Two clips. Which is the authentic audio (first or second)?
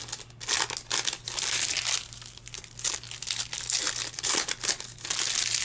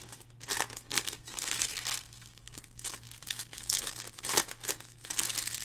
first